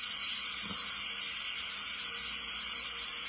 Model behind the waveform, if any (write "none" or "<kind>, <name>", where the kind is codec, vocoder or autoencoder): none